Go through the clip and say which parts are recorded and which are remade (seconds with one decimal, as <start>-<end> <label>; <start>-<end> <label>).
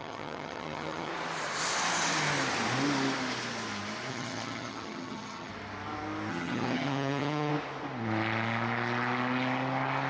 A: 0.0-1.1 remade; 1.1-4.1 recorded; 4.1-5.5 remade; 5.5-6.3 recorded; 6.3-7.5 remade; 7.5-10.1 recorded